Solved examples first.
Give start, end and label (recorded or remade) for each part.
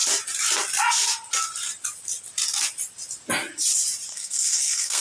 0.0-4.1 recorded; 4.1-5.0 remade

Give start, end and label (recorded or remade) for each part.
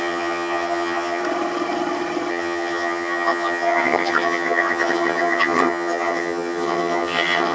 0.0-1.2 remade; 1.2-2.3 recorded; 2.3-7.5 remade